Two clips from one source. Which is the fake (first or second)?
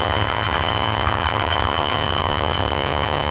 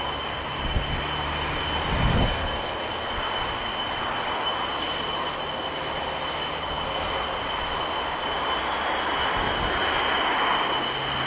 first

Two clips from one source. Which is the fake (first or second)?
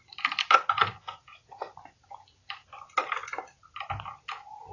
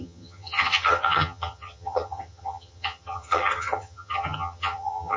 second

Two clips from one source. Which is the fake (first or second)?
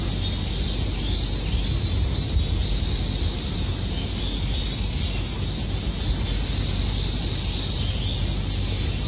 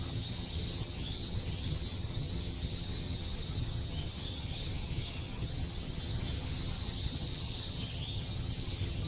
second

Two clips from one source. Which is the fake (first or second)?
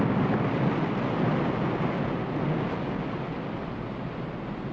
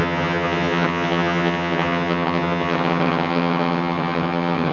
second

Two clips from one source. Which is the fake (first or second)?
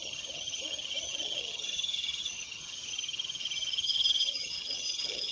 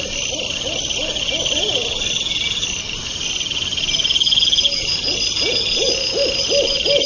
first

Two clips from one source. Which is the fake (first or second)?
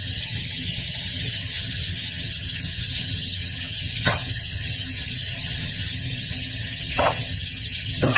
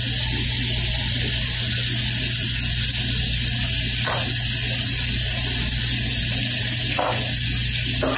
first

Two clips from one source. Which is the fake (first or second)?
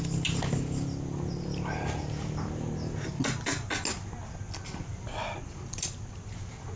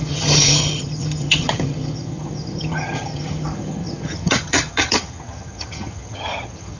second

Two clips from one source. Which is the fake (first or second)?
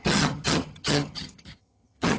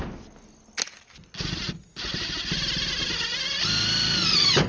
first